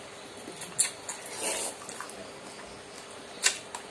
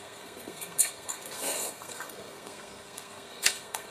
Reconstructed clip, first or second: second